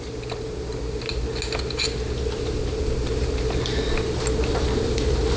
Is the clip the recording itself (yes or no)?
yes